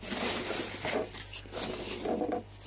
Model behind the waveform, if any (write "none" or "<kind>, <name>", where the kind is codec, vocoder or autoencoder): none